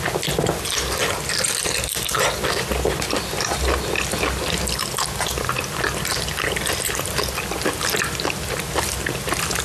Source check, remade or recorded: recorded